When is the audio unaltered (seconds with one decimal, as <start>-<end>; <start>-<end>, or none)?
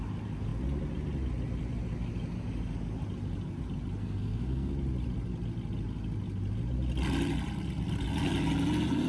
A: 0.0-4.0; 4.7-9.1